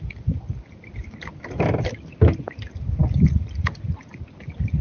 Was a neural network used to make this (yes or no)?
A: no